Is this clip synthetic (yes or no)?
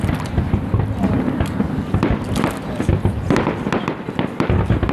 no